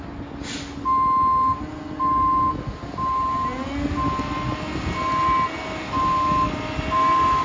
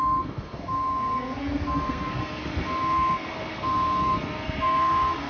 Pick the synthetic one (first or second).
second